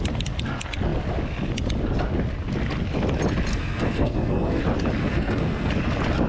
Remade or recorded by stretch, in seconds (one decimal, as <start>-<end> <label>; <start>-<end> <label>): 0.0-3.5 recorded; 3.5-4.6 remade; 4.6-5.0 recorded; 5.0-5.7 remade; 5.7-6.3 recorded

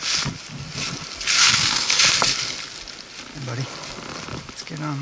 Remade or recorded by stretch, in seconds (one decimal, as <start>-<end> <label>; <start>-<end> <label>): 0.0-1.4 recorded; 1.4-2.0 remade; 2.0-5.0 recorded

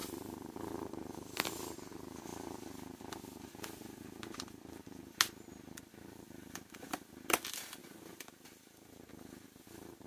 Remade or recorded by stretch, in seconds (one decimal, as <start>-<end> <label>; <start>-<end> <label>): 0.0-10.1 recorded

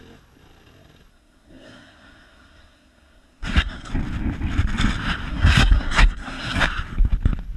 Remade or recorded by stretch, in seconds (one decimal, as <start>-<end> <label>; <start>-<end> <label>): 0.0-1.1 recorded; 1.1-3.9 remade; 3.9-5.3 recorded; 5.3-6.6 remade; 6.6-7.6 recorded

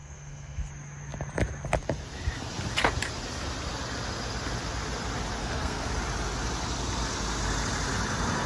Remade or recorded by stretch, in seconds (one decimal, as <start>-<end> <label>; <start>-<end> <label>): 0.0-0.7 remade; 0.7-5.4 recorded; 5.4-5.9 remade; 5.9-8.5 recorded

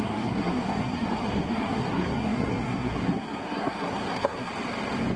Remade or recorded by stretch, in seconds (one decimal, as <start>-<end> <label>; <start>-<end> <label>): 0.0-4.5 remade; 4.5-5.2 recorded